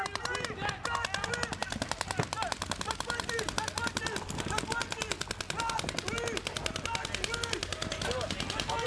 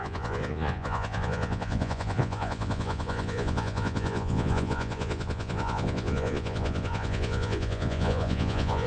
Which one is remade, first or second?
second